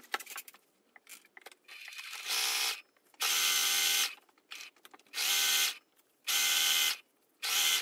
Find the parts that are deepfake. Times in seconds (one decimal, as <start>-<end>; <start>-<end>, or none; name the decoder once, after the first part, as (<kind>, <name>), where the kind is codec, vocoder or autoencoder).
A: 0.0-1.1 (vocoder, BigVGAN v2); 2.2-7.8